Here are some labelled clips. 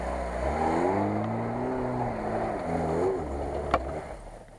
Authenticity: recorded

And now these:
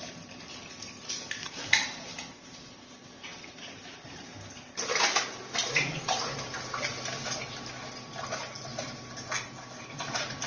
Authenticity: recorded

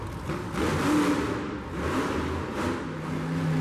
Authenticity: recorded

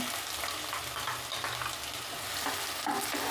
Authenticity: recorded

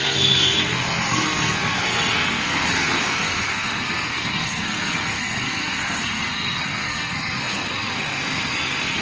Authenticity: remade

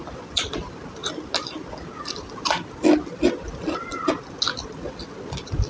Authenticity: recorded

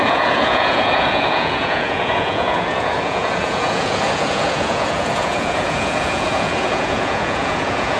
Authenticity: remade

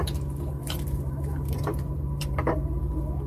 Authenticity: remade